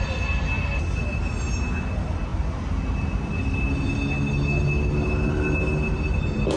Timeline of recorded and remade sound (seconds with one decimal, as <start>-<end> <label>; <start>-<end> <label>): 0.0-6.6 recorded